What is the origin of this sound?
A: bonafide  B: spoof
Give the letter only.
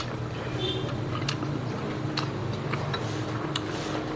A